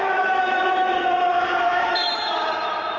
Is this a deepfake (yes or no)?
yes